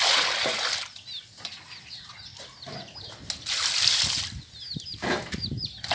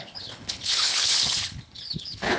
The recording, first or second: first